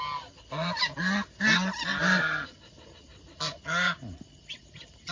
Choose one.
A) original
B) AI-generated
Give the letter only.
A